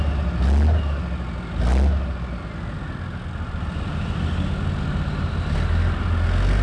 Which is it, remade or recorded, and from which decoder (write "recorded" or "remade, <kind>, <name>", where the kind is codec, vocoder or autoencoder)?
recorded